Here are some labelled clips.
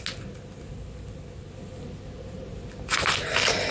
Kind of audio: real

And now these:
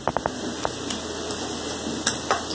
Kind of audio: real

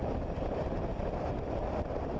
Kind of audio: real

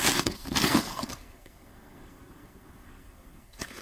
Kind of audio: fake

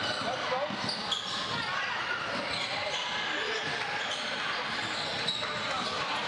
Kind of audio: real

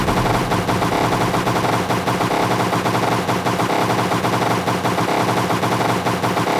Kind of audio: real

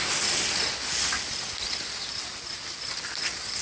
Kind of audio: real